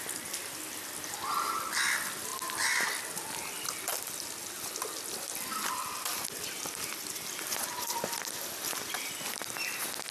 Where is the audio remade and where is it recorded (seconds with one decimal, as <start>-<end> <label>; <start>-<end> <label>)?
0.0-10.1 recorded